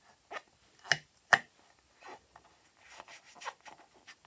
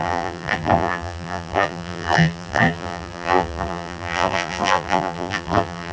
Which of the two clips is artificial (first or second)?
second